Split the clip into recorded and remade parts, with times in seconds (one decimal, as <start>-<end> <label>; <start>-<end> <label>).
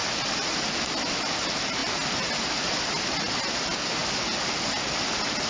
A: 0.0-5.5 recorded